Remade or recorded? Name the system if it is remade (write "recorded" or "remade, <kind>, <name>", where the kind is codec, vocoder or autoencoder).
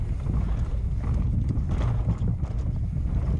recorded